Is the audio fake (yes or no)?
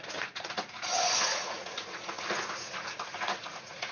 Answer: yes